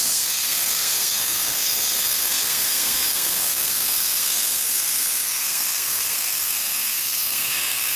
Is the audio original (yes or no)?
no